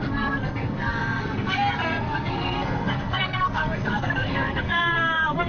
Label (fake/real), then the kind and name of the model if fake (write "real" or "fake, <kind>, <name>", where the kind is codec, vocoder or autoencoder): fake, codec, SNAC